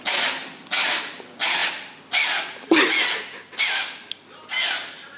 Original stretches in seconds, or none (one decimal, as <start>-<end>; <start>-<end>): 0.0-5.2